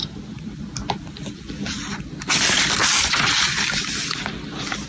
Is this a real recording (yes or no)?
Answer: no